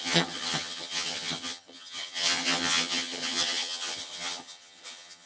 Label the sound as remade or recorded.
remade